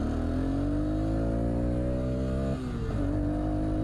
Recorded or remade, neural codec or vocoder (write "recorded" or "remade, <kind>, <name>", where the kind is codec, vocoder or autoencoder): recorded